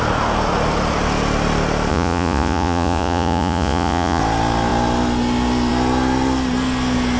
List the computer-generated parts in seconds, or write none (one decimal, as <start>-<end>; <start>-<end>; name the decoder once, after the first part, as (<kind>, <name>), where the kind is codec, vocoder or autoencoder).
1.9-4.2 (vocoder, Vocos)